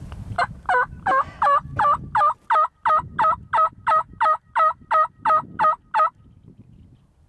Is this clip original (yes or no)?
yes